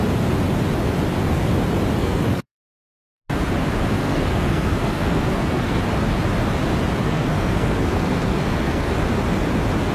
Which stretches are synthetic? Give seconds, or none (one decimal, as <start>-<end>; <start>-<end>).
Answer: 2.0-3.2; 4.0-5.8; 7.0-8.9